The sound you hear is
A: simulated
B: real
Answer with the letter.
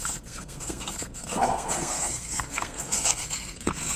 A